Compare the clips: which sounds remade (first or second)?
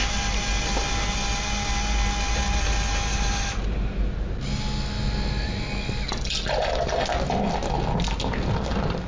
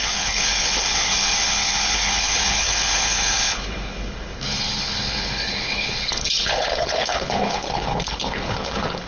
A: second